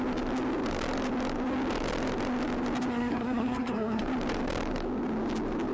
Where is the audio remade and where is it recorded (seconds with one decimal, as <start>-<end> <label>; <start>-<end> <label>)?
0.0-2.9 recorded; 2.9-4.0 remade; 4.0-5.7 recorded